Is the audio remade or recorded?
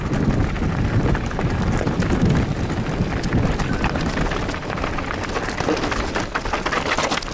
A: recorded